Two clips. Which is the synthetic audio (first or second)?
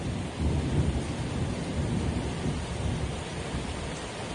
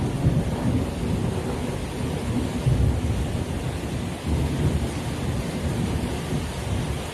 first